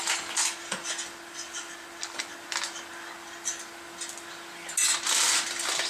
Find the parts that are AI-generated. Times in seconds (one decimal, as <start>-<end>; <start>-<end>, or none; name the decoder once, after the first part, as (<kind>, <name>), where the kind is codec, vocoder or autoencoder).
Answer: none